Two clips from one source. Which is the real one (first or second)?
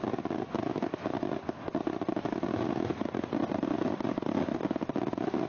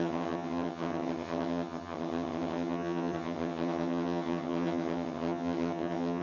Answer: first